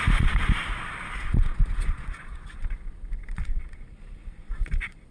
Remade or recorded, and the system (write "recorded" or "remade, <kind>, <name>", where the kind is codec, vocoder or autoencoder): remade, vocoder, Vocos